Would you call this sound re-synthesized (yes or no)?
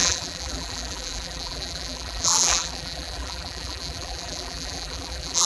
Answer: yes